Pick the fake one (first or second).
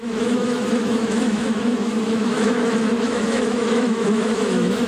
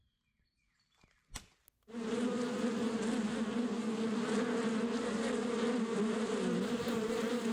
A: first